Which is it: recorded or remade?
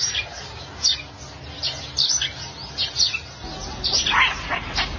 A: recorded